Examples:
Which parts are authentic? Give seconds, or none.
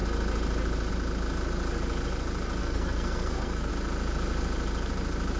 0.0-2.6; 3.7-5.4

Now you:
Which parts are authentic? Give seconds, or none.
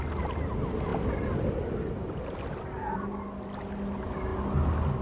0.0-5.0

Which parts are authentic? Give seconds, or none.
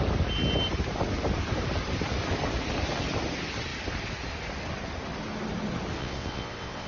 0.0-6.0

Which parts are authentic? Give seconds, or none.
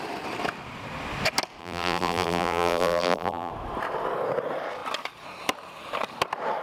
0.0-1.6; 3.5-6.6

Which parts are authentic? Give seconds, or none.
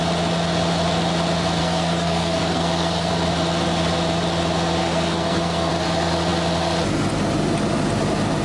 0.0-1.6; 3.1-4.8; 5.7-8.4